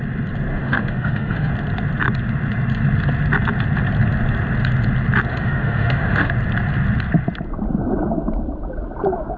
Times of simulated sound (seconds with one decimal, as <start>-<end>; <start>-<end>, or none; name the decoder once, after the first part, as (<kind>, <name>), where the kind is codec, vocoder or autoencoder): 0.5-1.5 (autoencoder, DAC-VAE); 5.3-6.3